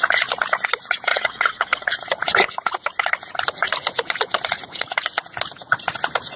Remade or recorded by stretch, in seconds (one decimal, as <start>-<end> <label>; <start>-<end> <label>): 0.0-1.1 recorded; 1.1-1.9 remade; 1.9-6.4 recorded